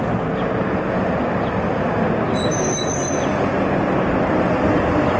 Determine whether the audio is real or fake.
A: real